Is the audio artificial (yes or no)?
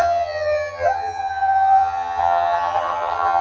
yes